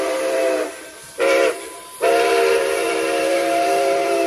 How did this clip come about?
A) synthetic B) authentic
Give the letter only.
A